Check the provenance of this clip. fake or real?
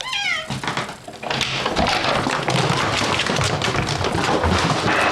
real